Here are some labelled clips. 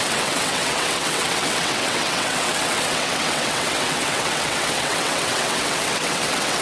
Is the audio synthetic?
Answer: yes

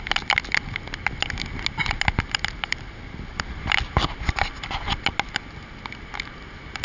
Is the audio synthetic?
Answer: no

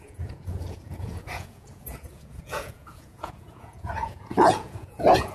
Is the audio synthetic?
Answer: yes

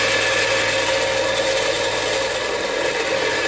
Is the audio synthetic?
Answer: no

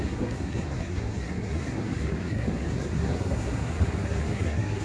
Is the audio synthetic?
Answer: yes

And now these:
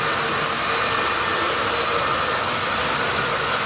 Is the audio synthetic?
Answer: no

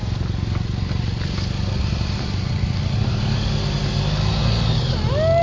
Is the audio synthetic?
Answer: no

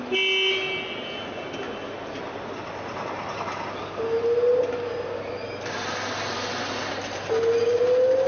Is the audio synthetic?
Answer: no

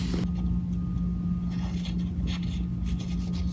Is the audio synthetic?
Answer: no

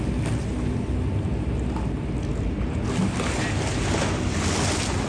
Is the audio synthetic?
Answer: no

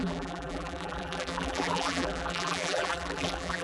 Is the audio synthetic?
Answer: yes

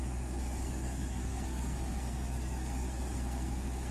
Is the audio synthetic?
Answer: yes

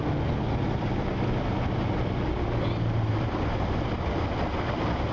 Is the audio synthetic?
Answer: no